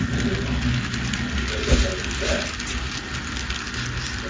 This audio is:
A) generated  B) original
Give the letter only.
B